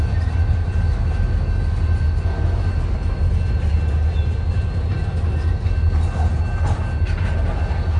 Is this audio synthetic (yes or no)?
no